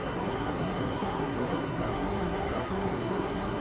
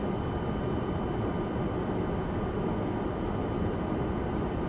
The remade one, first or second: first